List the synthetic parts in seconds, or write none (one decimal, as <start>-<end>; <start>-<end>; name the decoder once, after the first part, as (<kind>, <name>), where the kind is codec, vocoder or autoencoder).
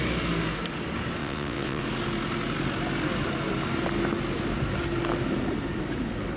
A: 1.2-1.8 (vocoder, WaveNeXt)